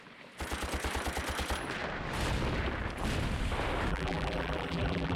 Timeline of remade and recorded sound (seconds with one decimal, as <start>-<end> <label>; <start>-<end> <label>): 0.0-3.9 recorded; 3.9-5.2 remade